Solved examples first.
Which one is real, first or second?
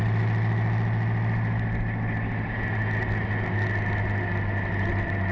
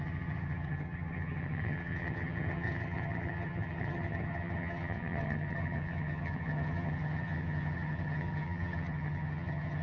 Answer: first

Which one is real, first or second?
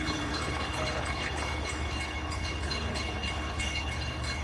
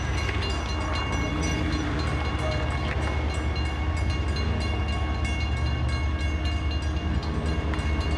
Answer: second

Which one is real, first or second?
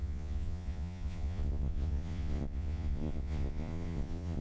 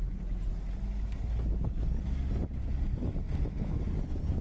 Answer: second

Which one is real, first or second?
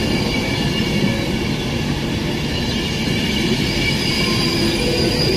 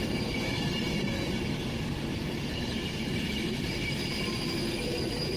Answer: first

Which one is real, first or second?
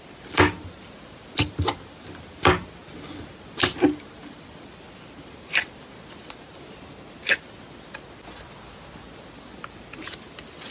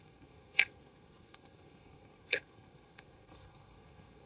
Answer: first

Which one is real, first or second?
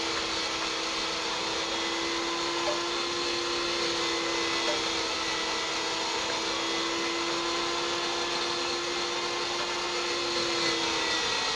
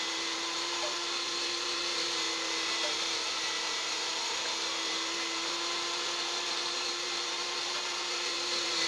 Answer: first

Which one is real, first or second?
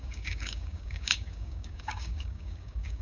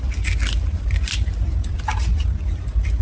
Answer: second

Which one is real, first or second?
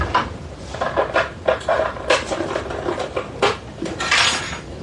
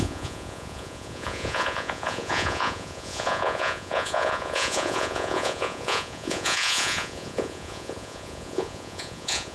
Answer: first